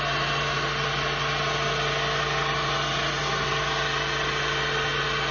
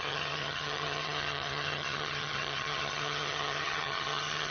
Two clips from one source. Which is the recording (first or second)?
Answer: first